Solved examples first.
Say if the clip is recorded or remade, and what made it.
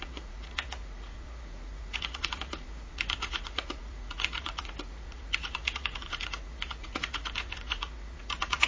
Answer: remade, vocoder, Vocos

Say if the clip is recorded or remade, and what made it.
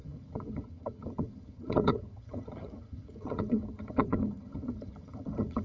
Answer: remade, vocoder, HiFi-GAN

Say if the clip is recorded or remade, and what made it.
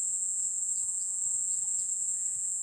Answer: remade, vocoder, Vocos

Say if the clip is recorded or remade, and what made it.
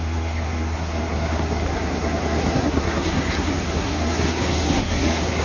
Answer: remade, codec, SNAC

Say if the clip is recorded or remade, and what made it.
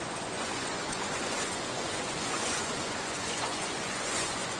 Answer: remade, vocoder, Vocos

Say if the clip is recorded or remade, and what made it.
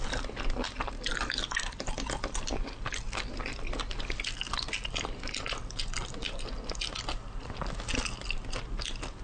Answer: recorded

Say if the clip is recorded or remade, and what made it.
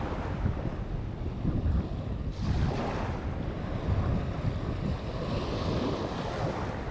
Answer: recorded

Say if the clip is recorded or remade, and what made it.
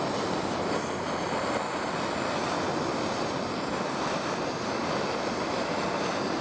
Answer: recorded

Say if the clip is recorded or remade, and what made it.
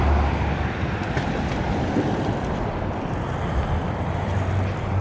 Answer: remade, vocoder, BigVGAN v2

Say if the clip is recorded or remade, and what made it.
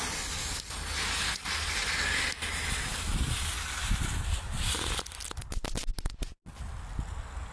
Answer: recorded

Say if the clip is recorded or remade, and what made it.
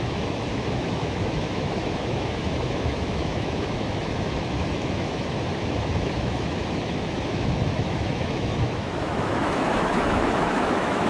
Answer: remade, autoencoder, DAC-VAE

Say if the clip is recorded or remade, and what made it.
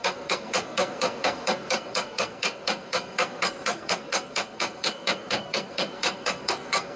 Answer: remade, codec, SNAC